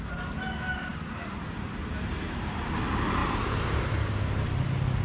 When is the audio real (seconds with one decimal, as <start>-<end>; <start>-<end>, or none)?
0.0-0.9; 2.1-3.2; 3.8-5.0